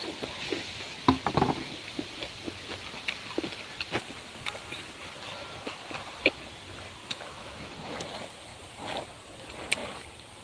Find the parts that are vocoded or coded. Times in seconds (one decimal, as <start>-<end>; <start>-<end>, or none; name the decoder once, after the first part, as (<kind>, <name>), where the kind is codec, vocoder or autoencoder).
7.0-7.7 (autoencoder, DAC-VAE)